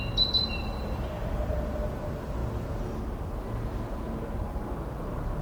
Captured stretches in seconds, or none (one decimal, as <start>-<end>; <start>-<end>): 0.0-5.4